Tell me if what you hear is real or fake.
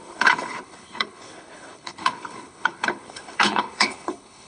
fake